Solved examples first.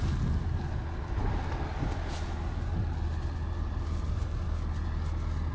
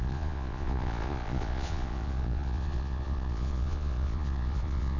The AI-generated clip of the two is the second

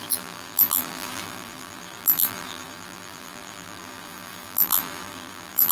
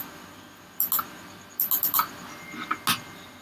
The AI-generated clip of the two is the first